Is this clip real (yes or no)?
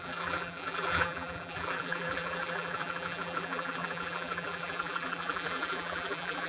no